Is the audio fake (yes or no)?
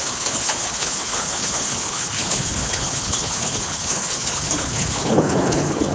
yes